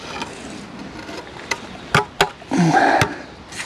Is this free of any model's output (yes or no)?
yes